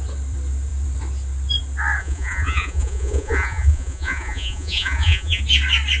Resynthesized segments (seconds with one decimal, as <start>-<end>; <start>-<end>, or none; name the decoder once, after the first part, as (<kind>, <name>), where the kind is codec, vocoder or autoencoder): 2.0-5.4 (vocoder, Vocos)